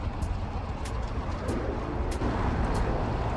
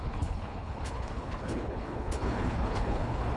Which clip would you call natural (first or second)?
first